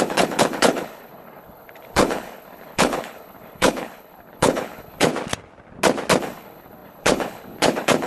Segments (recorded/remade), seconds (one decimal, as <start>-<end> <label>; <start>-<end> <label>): 0.0-5.1 remade; 5.1-6.2 recorded; 6.2-8.1 remade